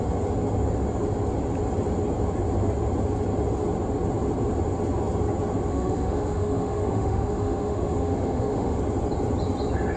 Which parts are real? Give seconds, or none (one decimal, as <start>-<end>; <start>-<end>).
0.0-5.7; 8.8-10.0